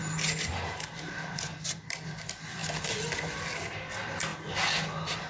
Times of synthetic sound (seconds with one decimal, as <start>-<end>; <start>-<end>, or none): none